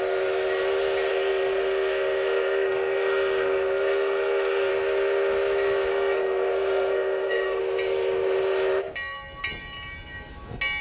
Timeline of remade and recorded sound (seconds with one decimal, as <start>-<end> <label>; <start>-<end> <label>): 0.0-1.1 recorded; 1.1-4.7 remade; 4.7-5.9 recorded; 5.9-7.6 remade; 7.6-10.8 recorded